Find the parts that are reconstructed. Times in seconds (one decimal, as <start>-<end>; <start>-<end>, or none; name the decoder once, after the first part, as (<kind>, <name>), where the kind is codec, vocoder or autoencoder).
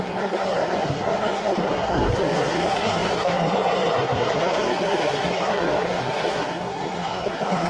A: 0.0-7.7 (codec, SNAC)